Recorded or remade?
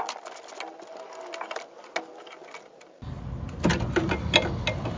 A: recorded